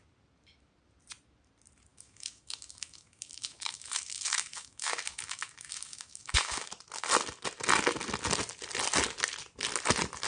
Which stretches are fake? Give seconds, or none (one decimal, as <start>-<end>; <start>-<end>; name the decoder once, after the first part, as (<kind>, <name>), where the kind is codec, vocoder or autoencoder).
1.9-6.7 (autoencoder, DAC-VAE)